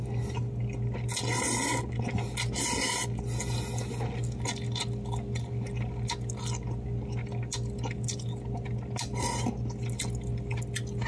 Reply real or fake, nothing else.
real